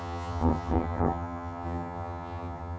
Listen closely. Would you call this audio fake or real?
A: fake